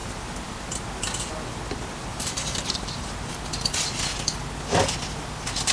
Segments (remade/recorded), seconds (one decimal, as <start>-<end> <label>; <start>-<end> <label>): 0.0-2.1 recorded; 2.1-2.8 remade; 2.8-5.7 recorded